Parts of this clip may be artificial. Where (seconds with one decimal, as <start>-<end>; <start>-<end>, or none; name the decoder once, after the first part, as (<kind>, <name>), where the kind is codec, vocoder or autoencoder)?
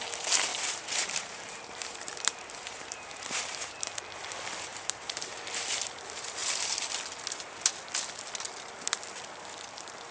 0.5-3.9 (vocoder, BigVGAN v2); 4.7-5.4